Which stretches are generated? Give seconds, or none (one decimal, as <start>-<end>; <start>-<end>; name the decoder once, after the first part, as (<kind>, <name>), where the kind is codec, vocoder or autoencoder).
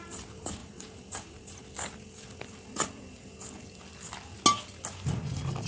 0.6-1.6 (vocoder, BigVGAN v2)